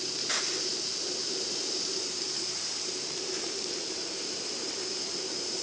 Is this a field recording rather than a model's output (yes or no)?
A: no